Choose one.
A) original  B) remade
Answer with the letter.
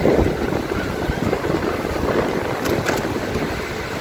A